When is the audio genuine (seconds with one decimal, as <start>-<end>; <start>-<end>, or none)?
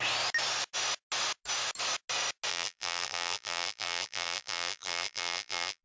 0.0-2.5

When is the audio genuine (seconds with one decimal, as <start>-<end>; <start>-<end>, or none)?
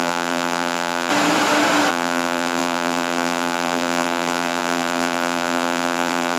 1.1-1.9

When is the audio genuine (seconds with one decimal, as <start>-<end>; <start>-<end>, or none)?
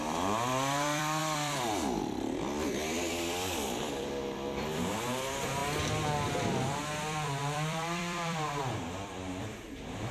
5.6-6.6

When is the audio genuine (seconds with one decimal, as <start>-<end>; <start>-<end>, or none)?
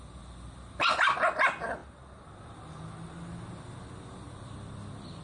0.0-5.2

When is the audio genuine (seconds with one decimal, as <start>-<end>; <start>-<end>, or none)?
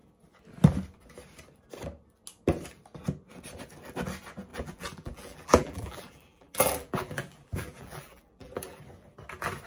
0.0-4.5; 8.8-9.7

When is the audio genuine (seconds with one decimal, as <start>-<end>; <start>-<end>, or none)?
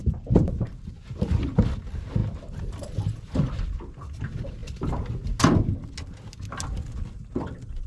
1.8-2.2; 3.5-7.9